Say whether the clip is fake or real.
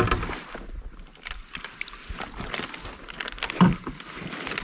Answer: real